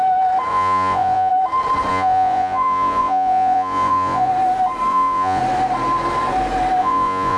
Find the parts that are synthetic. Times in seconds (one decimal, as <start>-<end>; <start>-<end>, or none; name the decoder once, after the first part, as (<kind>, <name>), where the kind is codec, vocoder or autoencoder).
0.5-1.3 (vocoder, Vocos); 1.9-4.3; 4.9-5.4; 6.8-7.4